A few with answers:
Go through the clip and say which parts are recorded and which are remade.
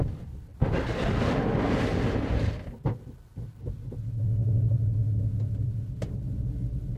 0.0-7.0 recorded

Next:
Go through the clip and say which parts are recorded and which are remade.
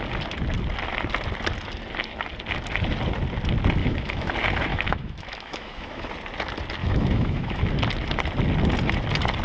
0.0-3.8 recorded; 3.8-4.3 remade; 4.3-4.7 recorded; 4.7-6.1 remade; 6.1-6.8 recorded; 6.8-7.6 remade; 7.6-9.4 recorded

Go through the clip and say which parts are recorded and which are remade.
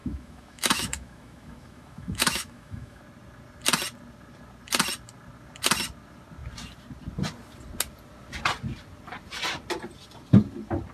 0.0-3.0 remade; 3.0-10.9 recorded